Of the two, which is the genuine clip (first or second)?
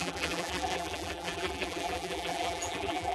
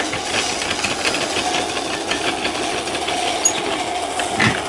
second